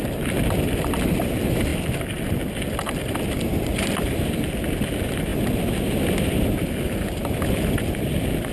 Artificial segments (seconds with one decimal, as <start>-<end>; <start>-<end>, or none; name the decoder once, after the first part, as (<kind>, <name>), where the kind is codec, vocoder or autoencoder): none